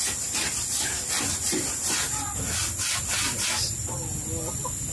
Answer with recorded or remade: recorded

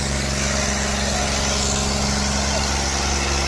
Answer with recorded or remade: recorded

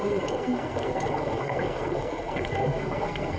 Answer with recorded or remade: remade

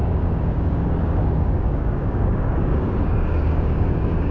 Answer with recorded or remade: remade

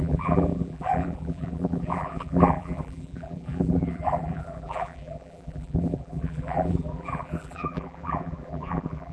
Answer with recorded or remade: remade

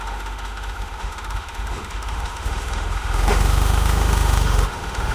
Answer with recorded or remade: remade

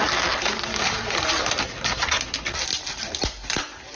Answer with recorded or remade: recorded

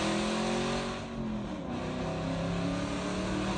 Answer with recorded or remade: recorded